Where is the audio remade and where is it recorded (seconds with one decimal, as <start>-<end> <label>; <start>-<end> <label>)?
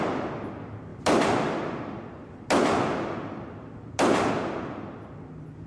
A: 0.0-0.9 recorded; 0.9-4.3 remade; 4.3-5.7 recorded